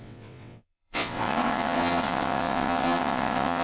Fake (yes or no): yes